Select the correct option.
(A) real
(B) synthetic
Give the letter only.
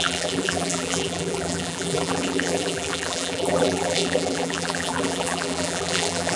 B